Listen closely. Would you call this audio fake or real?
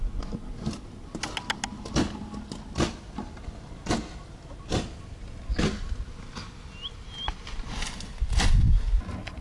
real